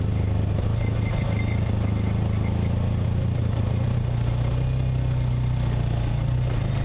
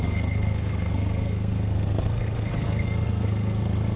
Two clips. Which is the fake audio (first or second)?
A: second